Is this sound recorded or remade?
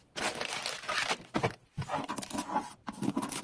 recorded